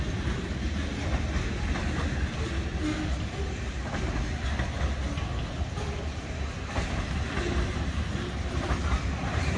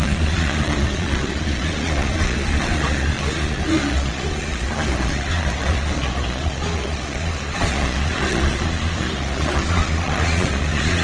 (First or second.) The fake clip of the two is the second